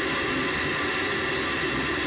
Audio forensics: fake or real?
real